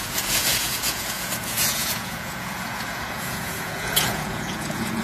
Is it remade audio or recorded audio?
remade